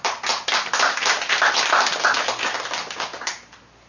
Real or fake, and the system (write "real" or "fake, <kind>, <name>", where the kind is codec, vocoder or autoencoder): real